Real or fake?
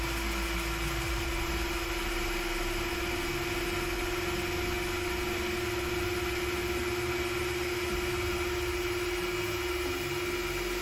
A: real